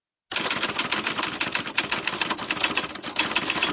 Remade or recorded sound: recorded